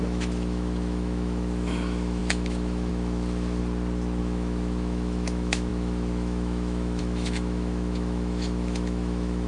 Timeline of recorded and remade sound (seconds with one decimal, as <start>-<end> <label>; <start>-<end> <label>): 0.0-3.6 remade; 3.6-4.2 recorded; 4.2-9.5 remade